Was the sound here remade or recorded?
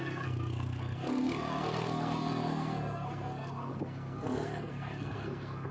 remade